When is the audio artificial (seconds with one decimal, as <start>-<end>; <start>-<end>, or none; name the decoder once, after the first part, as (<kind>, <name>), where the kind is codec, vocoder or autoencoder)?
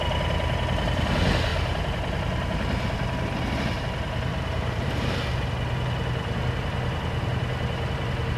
4.3-5.2 (vocoder, BigVGAN v2)